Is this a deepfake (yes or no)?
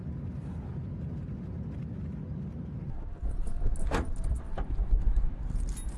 no